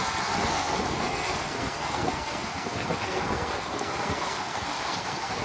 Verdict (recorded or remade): remade